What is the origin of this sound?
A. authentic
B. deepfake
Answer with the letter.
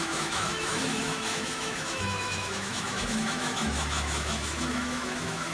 B